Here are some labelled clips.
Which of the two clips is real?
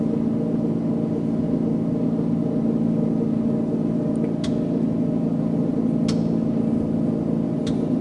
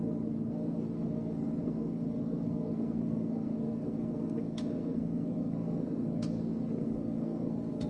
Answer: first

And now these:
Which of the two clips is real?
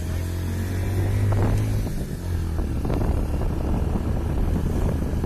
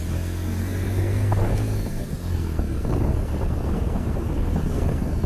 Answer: first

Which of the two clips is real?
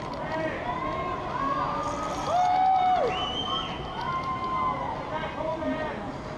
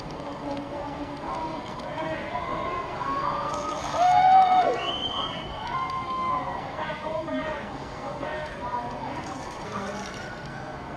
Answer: first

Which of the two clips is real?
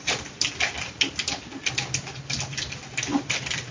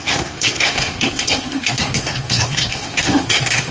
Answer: first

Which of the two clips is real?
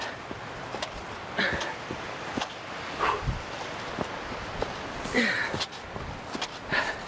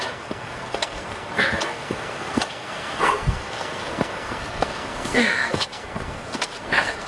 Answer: first